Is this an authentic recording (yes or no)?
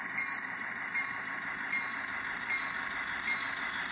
yes